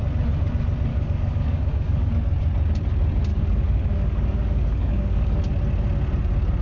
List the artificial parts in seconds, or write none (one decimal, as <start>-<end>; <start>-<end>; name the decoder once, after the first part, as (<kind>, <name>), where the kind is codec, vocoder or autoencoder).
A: 0.9-2.1 (codec, DAC); 3.3-5.4

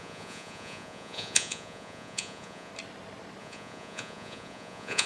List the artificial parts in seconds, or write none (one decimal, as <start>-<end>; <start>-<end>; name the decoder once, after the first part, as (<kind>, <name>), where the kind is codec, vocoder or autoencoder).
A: 0.0-2.7 (vocoder, Vocos); 3.4-5.1

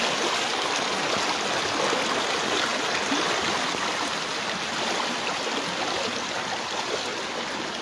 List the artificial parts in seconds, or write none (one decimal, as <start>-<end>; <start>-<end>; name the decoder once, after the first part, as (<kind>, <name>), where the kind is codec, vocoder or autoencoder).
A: none

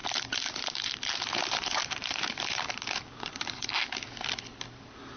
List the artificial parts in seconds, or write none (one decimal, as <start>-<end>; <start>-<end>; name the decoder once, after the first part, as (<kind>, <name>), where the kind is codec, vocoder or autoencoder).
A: 0.0-2.7 (vocoder, BigVGAN v2)

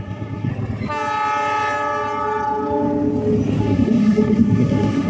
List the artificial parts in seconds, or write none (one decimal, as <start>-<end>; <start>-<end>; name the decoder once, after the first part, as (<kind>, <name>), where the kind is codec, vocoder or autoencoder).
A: 0.0-0.5 (codec, SNAC); 3.6-5.1